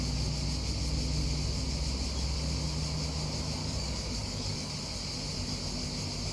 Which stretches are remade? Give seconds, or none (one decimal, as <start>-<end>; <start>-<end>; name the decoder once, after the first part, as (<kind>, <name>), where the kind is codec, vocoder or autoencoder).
3.6-4.7 (codec, DAC)